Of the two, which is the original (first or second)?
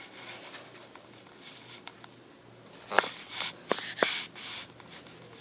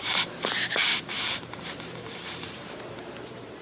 first